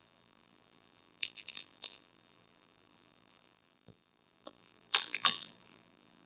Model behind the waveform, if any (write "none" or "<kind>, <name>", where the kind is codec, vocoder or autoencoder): vocoder, BigVGAN v2